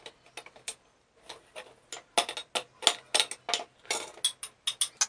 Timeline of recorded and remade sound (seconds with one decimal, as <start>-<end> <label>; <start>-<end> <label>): 0.0-5.1 recorded